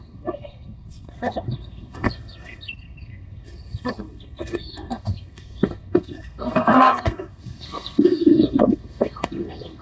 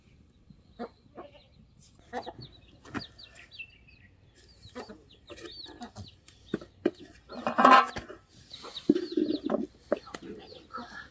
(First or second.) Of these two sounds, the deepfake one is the first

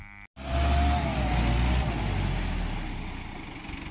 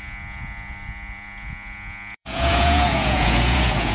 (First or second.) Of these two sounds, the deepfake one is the second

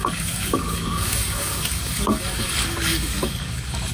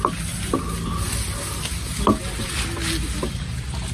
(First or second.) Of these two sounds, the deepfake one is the first